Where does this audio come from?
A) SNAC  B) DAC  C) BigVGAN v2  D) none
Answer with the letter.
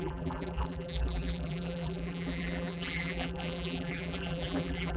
C